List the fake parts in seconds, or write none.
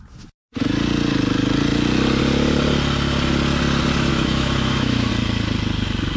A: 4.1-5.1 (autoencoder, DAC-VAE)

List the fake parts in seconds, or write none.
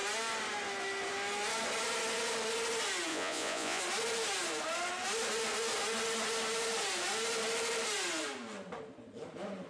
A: 3.1-3.8 (vocoder, Vocos)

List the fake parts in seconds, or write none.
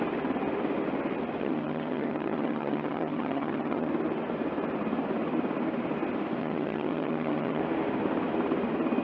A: 1.4-3.9 (vocoder, HiFi-GAN); 6.4-7.6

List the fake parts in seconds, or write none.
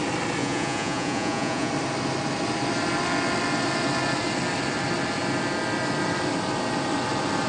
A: 0.4-1.7 (vocoder, Vocos)